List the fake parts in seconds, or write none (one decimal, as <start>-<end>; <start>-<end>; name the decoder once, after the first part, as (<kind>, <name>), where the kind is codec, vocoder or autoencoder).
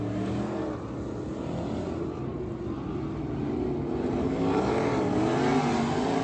0.0-0.6 (codec, DAC); 4.2-4.9